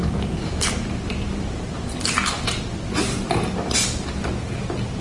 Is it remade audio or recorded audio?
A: remade